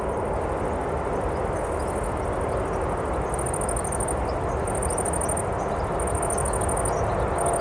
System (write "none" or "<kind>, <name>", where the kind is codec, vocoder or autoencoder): none